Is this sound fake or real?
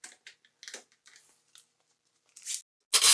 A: real